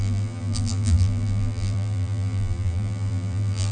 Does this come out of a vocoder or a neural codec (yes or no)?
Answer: yes